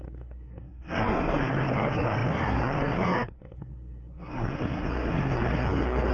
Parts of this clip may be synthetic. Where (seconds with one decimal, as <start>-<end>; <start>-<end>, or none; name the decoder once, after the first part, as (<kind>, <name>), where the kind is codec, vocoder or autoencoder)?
0.0-6.1 (codec, SNAC)